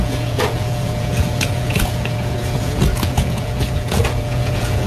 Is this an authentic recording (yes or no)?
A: no